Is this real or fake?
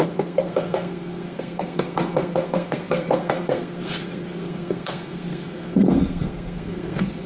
fake